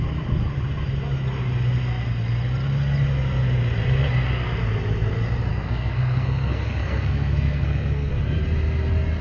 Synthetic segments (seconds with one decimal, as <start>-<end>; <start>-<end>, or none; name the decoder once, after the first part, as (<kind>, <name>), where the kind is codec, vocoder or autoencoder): 5.5-8.1 (codec, SNAC)